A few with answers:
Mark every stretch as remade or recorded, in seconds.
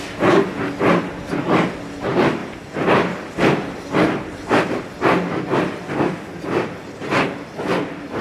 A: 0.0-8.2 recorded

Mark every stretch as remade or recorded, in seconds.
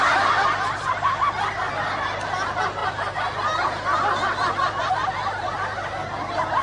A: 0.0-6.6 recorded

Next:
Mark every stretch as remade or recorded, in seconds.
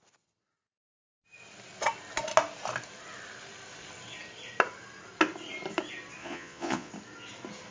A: 0.0-6.2 recorded; 6.2-6.9 remade; 6.9-7.7 recorded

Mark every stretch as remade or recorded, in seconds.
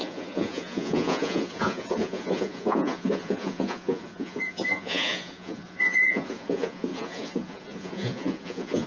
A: 0.0-8.9 remade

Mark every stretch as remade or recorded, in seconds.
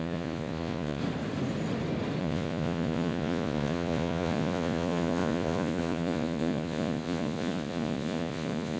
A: 0.0-1.0 remade; 1.0-2.2 recorded; 2.2-8.8 remade